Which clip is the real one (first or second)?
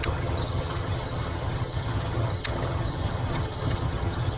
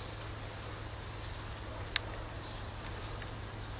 second